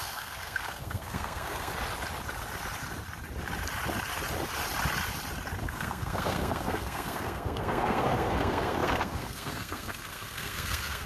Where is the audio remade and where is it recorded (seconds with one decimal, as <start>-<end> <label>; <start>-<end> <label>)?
0.0-1.7 remade; 1.7-5.6 recorded; 5.6-11.1 remade